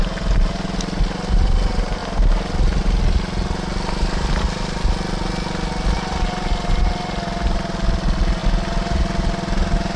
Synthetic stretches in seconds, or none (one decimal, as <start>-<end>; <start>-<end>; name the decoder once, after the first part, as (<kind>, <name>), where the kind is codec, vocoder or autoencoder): none